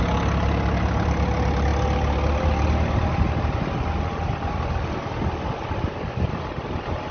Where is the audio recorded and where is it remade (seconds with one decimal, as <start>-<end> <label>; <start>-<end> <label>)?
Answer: 0.0-7.1 recorded